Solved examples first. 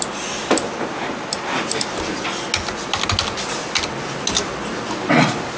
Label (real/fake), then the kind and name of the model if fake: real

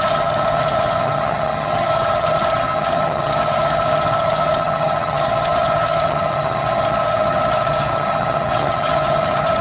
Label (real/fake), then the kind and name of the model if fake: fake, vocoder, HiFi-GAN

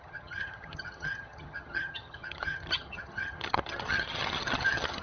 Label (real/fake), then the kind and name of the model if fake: fake, vocoder, HiFi-GAN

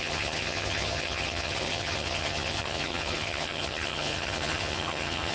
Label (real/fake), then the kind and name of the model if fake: fake, vocoder, HiFi-GAN